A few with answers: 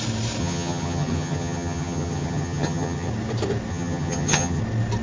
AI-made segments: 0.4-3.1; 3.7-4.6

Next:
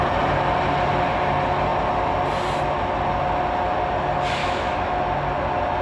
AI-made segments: 4.4-5.0